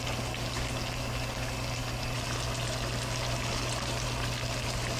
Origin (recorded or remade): recorded